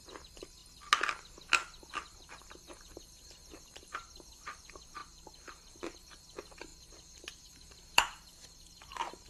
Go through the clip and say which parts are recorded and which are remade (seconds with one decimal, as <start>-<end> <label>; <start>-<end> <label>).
0.0-0.6 remade; 0.6-2.4 recorded; 2.4-5.0 remade; 5.0-5.8 recorded; 5.8-6.7 remade; 6.7-7.4 recorded; 7.4-9.3 remade